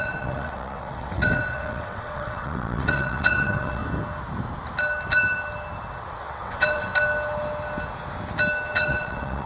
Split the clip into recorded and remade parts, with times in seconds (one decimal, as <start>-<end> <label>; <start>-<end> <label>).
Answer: 0.0-3.8 remade; 3.8-6.2 recorded; 6.2-6.9 remade; 6.9-8.7 recorded; 8.7-9.5 remade